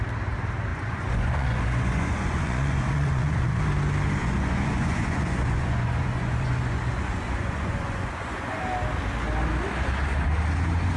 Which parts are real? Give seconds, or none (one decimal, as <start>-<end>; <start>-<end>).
0.0-0.7; 3.6-4.2; 8.6-11.0